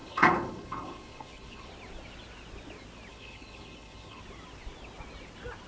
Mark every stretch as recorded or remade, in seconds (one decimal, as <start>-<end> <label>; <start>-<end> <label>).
0.0-1.7 remade; 1.7-3.1 recorded; 3.1-4.2 remade; 4.2-5.7 recorded